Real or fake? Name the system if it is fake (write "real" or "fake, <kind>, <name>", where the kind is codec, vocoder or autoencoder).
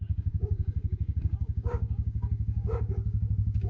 fake, codec, DAC